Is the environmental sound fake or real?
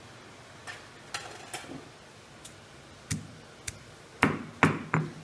real